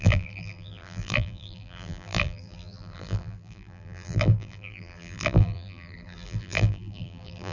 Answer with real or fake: fake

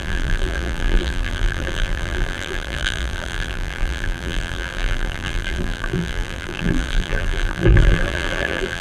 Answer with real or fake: fake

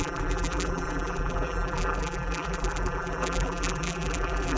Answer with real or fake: fake